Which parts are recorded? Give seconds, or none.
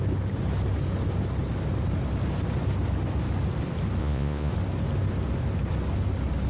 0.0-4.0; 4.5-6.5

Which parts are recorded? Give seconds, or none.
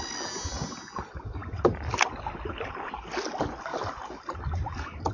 0.0-5.1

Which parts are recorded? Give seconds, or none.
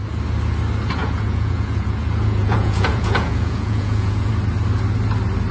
0.0-1.0; 4.3-5.5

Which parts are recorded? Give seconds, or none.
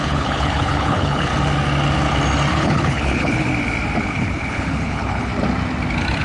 1.3-2.5; 3.5-4.0; 5.3-6.2